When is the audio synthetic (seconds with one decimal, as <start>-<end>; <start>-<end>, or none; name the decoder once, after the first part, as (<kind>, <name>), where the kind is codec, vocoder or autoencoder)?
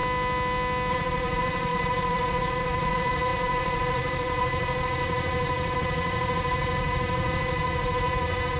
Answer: 0.9-8.6 (vocoder, Vocos)